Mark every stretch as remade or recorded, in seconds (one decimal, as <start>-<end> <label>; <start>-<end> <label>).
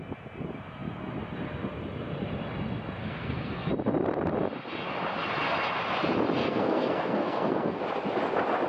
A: 0.0-3.0 recorded; 3.0-3.7 remade; 3.7-6.4 recorded; 6.4-7.8 remade; 7.8-8.7 recorded